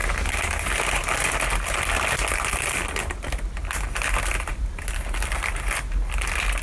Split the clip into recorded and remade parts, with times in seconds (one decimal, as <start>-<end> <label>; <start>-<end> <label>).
0.0-6.6 recorded